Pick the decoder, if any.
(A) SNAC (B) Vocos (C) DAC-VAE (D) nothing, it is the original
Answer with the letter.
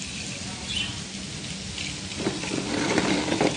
D